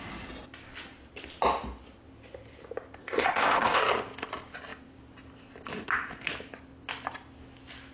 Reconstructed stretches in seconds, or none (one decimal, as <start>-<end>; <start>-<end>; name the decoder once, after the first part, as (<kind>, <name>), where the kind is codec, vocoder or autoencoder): 3.0-3.8 (codec, ZipCodec)

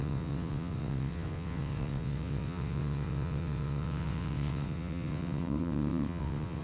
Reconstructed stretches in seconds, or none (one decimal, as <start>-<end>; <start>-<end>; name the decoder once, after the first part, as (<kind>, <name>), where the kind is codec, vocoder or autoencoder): 0.0-6.6 (vocoder, WaveNeXt)

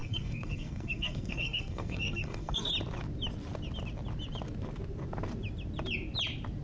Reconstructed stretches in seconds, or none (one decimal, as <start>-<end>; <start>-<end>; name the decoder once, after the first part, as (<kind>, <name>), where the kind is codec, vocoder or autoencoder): 0.0-2.7 (codec, SNAC)

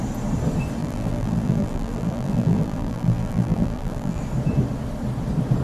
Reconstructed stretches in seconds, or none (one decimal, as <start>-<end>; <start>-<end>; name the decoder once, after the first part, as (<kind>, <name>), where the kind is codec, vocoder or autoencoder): 0.8-4.2 (vocoder, BigVGAN v2)

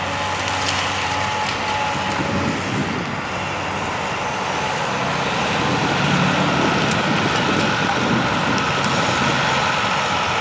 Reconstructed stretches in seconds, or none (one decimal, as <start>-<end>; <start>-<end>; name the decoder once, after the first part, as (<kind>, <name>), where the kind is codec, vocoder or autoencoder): none

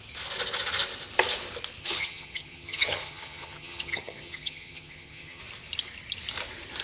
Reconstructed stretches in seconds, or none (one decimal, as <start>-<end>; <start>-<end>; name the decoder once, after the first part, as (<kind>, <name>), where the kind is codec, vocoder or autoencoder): 1.8-5.4 (vocoder, HiFi-GAN)

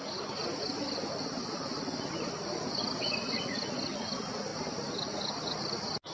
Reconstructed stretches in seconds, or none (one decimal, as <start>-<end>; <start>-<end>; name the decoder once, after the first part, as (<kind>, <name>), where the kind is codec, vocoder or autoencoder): 0.0-3.7 (vocoder, BigVGAN v2)

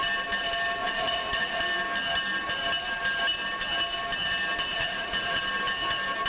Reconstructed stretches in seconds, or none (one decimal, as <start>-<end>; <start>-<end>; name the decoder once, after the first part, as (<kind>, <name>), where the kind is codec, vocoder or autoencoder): 0.8-1.6 (vocoder, Vocos); 4.7-5.4